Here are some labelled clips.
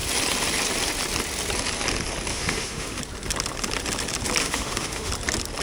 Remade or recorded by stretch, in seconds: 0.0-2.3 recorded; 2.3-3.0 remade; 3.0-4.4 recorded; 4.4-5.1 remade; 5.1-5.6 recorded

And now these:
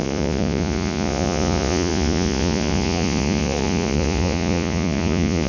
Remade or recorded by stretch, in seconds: 0.0-5.5 remade

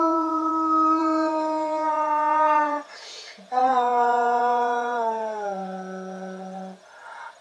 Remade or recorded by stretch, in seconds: 0.0-0.5 remade; 0.5-1.0 recorded; 1.0-7.4 remade

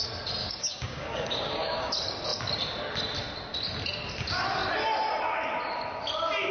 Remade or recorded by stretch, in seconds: 0.0-0.4 recorded; 0.4-1.9 remade; 1.9-6.5 recorded

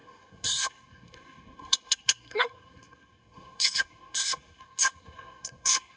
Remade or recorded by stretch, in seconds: 0.0-6.0 remade

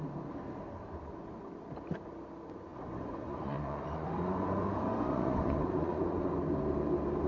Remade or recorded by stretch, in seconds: 0.0-2.7 recorded; 2.7-6.3 remade; 6.3-7.3 recorded

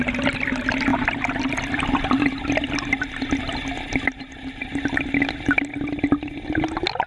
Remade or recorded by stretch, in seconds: 0.0-0.9 recorded; 0.9-3.4 remade; 3.4-7.1 recorded